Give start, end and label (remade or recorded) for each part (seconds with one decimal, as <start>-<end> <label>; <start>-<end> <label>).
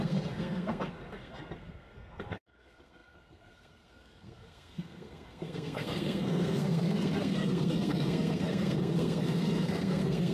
0.0-10.3 remade